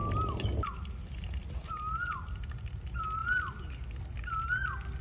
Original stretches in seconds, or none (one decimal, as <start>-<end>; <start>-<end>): 0.0-5.0